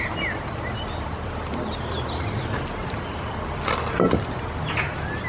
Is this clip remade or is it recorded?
recorded